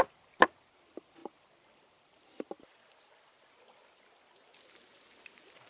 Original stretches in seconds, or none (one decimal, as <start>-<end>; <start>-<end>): 0.0-5.7